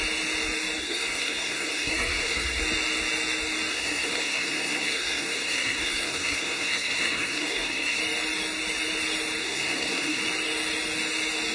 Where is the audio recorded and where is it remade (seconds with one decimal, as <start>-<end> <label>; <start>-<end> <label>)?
0.0-0.8 recorded; 0.8-2.6 remade; 2.6-3.7 recorded; 3.7-8.0 remade; 8.0-9.4 recorded; 9.4-10.2 remade; 10.2-11.5 recorded